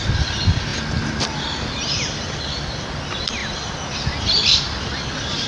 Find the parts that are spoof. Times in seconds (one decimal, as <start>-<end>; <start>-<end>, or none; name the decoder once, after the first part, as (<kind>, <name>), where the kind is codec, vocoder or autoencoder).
none